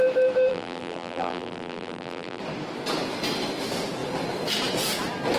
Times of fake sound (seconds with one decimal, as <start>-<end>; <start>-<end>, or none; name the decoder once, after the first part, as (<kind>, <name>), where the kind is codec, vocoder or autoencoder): 0.5-2.4 (vocoder, BigVGAN v2)